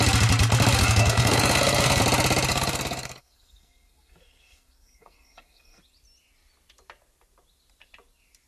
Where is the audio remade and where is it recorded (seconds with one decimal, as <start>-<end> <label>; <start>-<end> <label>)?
0.0-0.8 recorded; 0.8-2.0 remade; 2.0-2.5 recorded; 2.5-5.8 remade; 5.8-8.5 recorded